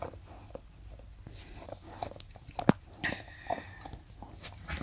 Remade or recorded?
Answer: recorded